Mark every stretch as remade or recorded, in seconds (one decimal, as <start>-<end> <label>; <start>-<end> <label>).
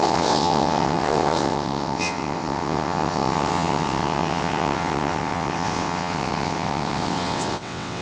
0.0-8.0 remade